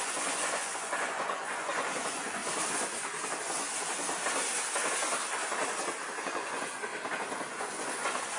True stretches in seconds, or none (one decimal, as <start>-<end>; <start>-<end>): 2.4-6.2; 6.9-7.5